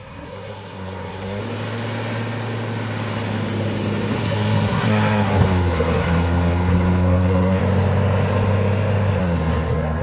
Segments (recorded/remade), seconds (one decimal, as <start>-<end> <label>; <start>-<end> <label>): 0.0-1.4 remade; 1.4-4.2 recorded; 4.2-7.6 remade; 7.6-9.2 recorded; 9.2-10.0 remade